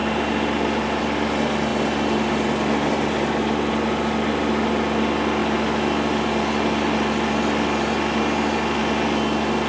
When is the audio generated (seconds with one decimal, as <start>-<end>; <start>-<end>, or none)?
none